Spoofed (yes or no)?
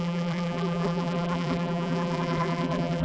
yes